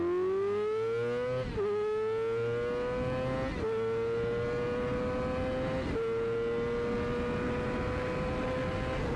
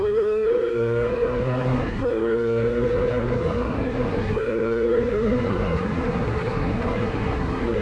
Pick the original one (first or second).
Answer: first